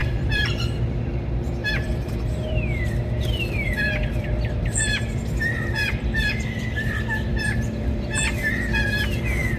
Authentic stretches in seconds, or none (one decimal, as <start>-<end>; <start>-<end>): 0.5-1.6; 6.6-7.3; 8.6-9.6